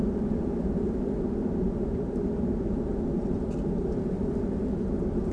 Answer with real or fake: real